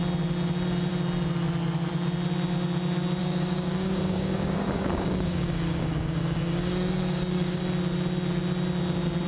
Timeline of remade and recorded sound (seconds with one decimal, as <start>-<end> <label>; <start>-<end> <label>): 0.0-3.2 recorded; 3.2-7.6 remade; 7.6-9.3 recorded

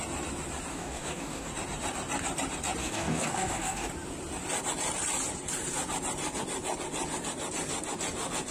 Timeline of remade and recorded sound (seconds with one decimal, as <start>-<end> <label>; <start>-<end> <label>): 0.0-0.7 recorded; 0.7-1.5 remade; 1.5-2.8 recorded; 2.8-3.9 remade; 3.9-8.5 recorded

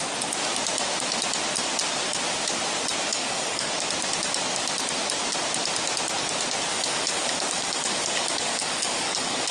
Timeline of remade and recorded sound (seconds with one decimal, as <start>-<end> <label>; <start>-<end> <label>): 0.0-3.1 recorded; 3.1-3.7 remade; 3.7-6.7 recorded; 6.7-9.5 remade

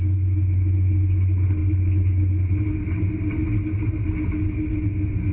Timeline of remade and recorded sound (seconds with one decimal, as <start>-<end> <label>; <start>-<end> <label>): 0.0-5.3 recorded